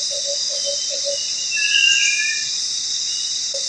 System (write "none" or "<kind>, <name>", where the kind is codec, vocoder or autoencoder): vocoder, BigVGAN v2